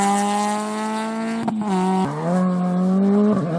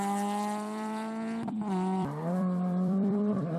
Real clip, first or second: first